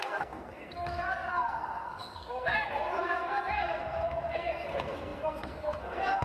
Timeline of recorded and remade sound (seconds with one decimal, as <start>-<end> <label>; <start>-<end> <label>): 0.0-6.2 remade